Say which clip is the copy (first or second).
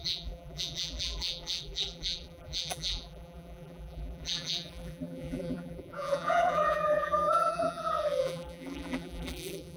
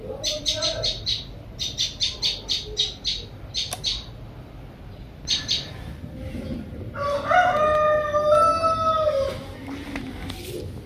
first